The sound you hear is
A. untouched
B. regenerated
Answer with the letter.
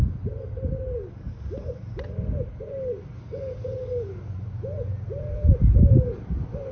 A